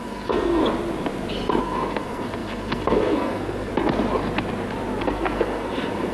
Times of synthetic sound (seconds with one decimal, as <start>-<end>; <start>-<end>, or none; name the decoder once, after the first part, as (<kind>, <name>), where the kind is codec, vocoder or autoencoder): 0.0-0.6 (codec, SNAC); 1.6-3.7; 5.0-6.1